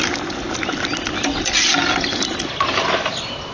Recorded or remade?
recorded